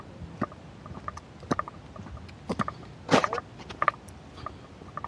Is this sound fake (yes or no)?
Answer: no